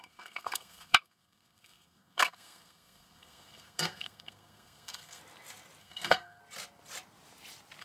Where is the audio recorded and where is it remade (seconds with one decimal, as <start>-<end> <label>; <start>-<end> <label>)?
0.0-5.2 remade; 5.2-5.8 recorded; 5.8-6.4 remade; 6.4-7.8 recorded